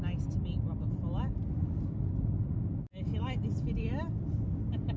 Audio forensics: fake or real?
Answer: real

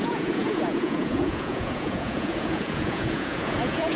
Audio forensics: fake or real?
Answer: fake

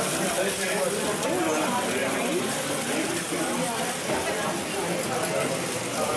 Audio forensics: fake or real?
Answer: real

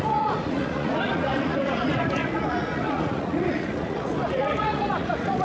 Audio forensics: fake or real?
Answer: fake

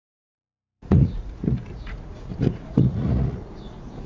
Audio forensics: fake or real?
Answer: fake